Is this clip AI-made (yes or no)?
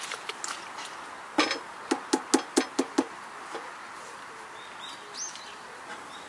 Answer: no